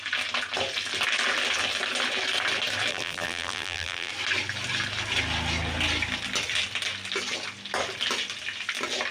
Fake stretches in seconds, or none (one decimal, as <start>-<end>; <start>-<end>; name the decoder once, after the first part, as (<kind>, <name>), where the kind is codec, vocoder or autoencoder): 2.9-4.1 (vocoder, BigVGAN v2)